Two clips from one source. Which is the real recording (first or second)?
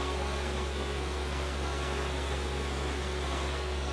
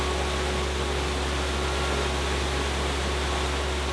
second